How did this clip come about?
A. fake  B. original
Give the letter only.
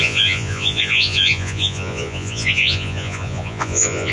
A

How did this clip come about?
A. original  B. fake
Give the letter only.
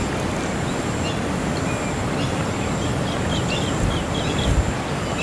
A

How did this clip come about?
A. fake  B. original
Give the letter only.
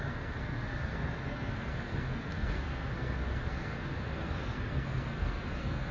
A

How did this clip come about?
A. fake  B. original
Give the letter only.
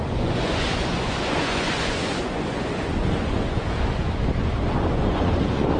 A